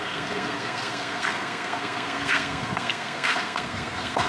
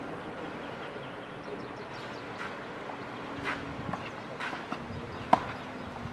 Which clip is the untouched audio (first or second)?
second